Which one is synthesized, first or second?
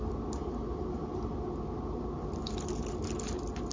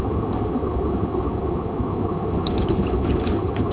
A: second